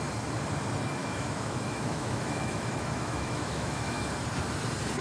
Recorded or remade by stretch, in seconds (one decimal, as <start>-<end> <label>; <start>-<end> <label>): 0.0-1.0 recorded; 1.0-4.0 remade; 4.0-5.0 recorded